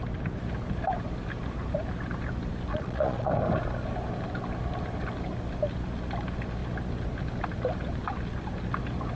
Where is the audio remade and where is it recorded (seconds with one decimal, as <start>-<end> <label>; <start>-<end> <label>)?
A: 0.0-2.7 recorded; 2.7-3.3 remade; 3.3-9.2 recorded